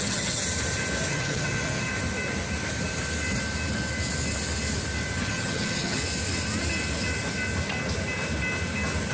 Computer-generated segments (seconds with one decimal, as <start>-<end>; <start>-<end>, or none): 0.0-0.4; 1.1-1.9; 5.3-6.0